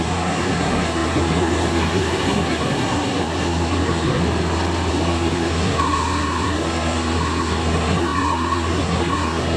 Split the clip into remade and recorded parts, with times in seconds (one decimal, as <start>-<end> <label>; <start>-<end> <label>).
0.0-4.2 remade; 4.2-4.9 recorded; 4.9-9.6 remade